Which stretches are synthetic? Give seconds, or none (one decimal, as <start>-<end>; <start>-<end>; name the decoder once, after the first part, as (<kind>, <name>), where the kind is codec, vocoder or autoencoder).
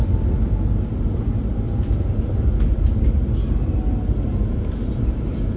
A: 0.0-0.6 (vocoder, BigVGAN v2)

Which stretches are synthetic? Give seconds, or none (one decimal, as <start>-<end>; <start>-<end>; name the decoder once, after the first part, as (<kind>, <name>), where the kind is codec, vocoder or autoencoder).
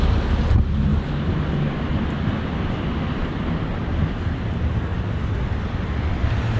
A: none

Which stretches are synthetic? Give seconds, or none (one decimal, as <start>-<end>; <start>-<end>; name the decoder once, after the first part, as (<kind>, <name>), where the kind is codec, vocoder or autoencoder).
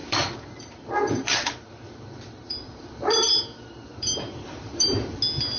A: 0.0-3.4 (vocoder, BigVGAN v2); 3.9-5.0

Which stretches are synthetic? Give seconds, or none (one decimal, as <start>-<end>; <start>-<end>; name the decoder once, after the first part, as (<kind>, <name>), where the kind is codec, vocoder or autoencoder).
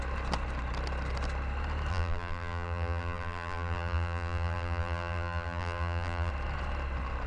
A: 1.9-6.3 (vocoder, BigVGAN v2)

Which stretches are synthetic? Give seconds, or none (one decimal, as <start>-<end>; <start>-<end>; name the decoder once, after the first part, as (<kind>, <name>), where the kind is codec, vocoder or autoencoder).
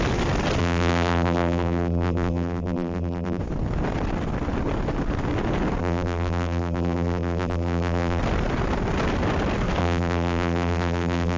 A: 0.6-3.4 (vocoder, BigVGAN v2); 5.8-8.2; 9.8-11.4